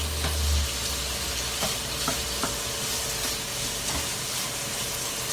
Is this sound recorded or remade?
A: recorded